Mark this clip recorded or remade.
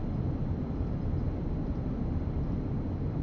recorded